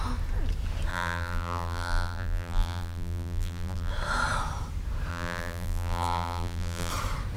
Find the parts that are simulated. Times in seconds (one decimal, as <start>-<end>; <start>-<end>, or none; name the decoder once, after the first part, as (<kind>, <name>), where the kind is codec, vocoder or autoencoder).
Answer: 0.9-3.9 (vocoder, BigVGAN v2); 5.1-6.9